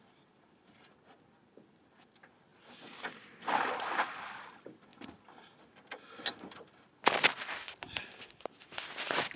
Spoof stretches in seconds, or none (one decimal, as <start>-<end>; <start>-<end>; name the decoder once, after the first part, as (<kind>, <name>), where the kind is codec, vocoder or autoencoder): none